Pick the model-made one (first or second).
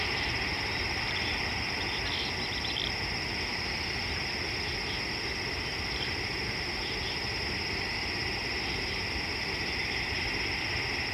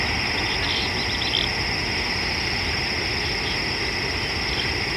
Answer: first